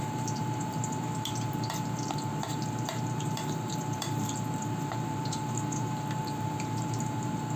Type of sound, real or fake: fake